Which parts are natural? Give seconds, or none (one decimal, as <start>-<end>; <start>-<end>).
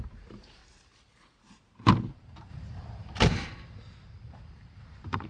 0.6-2.1